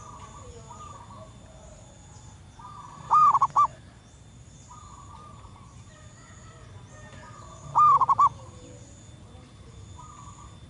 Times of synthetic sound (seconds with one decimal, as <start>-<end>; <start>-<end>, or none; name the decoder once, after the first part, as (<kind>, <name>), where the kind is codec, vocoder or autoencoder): none